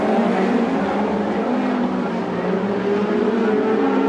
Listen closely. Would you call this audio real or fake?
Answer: real